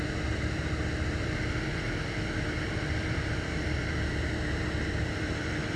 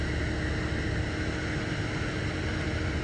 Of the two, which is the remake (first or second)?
first